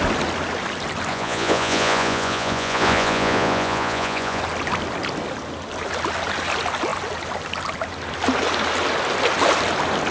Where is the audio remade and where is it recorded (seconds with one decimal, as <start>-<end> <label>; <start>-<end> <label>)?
0.0-1.1 recorded; 1.1-4.4 remade; 4.4-10.1 recorded